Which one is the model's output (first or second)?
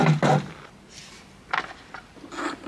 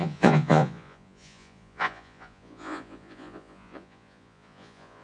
second